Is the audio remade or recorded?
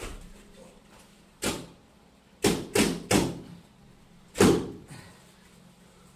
recorded